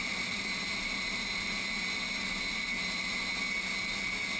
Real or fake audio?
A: real